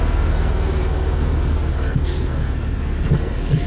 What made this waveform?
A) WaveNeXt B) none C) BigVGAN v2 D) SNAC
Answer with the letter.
D